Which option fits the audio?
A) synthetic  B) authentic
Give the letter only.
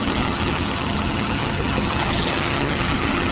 A